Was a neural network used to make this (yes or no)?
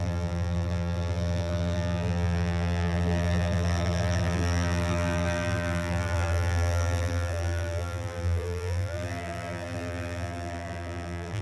yes